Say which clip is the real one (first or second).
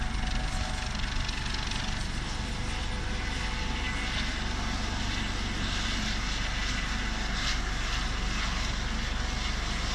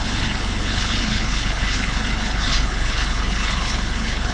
first